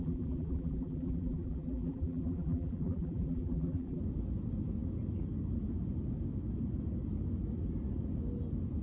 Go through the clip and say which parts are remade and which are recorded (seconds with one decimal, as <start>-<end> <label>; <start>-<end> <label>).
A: 0.0-4.0 remade; 4.0-8.8 recorded